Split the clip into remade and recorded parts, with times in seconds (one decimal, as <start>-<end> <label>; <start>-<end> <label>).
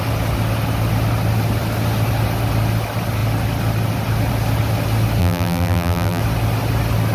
0.0-5.2 recorded; 5.2-6.2 remade; 6.2-7.1 recorded